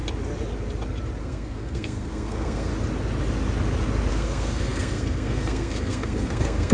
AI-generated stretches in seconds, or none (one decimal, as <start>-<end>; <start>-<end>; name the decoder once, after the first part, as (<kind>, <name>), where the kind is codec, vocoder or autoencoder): 1.2-2.7 (codec, SNAC); 4.1-6.7